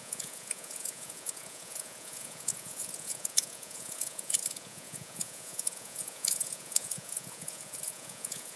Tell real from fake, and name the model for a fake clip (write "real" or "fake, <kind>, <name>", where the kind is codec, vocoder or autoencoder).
fake, vocoder, Vocos